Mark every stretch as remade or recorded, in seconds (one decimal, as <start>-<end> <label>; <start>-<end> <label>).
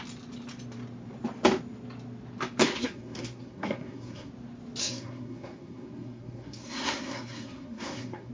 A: 0.0-2.6 recorded; 2.6-4.3 remade; 4.3-4.8 recorded; 4.8-8.3 remade